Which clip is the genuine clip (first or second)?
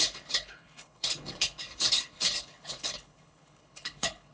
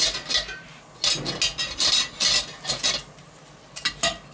second